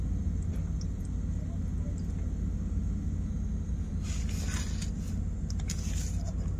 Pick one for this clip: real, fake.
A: real